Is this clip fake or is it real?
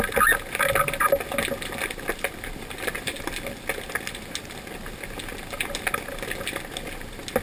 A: real